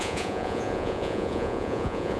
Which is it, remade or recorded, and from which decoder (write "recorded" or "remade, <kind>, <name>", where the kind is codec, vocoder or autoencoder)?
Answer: remade, vocoder, Vocos